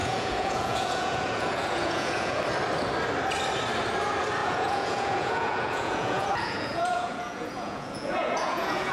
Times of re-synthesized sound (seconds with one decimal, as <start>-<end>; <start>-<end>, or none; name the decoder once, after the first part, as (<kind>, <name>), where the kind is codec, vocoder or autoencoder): 0.0-2.4 (vocoder, Vocos); 4.4-8.9